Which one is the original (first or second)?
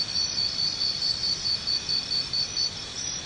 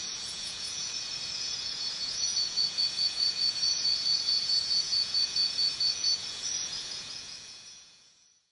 first